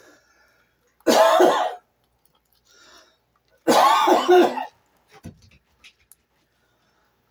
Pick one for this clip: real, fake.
real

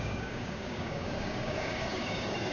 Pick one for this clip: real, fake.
fake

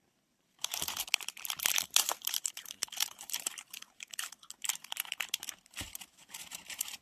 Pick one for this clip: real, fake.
fake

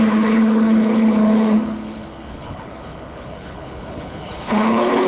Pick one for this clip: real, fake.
fake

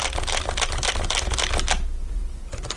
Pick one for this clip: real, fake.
real